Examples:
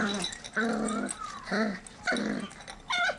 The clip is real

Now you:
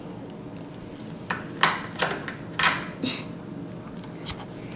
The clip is real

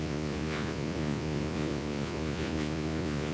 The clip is fake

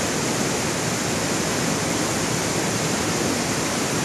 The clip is real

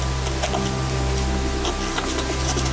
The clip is real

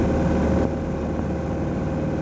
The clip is real